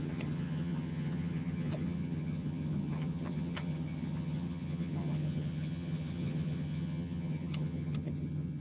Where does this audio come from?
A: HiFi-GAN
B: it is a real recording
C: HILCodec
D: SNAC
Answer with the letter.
A